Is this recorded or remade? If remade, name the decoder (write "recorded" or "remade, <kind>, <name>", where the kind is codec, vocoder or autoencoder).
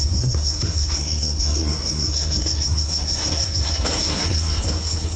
remade, codec, SNAC